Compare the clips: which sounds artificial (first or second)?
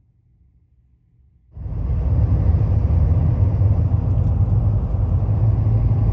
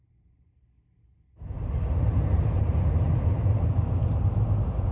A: second